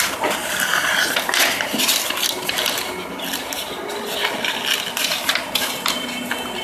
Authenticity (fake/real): real